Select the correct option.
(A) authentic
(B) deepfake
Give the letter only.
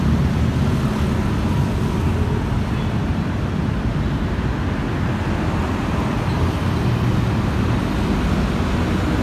A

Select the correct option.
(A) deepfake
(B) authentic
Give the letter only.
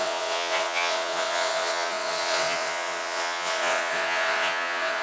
A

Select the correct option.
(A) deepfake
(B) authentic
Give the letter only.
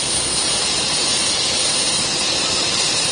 B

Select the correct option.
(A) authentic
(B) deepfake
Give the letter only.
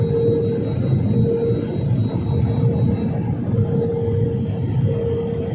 A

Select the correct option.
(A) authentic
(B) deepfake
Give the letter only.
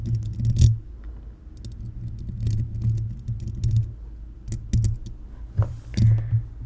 A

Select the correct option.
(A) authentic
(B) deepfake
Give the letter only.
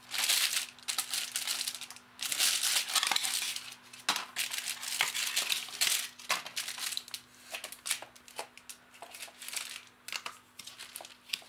A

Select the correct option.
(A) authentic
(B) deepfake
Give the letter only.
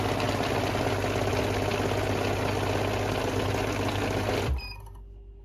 A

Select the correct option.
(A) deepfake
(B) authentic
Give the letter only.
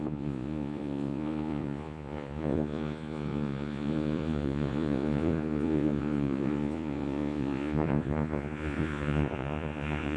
A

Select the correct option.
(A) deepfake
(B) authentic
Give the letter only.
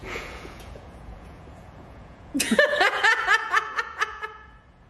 A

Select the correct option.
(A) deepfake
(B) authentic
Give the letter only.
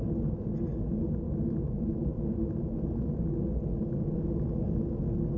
B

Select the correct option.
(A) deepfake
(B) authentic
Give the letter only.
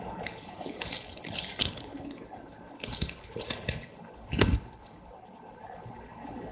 A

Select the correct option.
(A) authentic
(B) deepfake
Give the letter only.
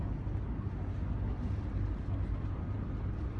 A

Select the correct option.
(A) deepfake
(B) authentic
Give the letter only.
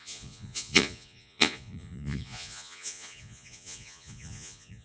A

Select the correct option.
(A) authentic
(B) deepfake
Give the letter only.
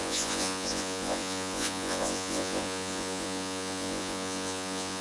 B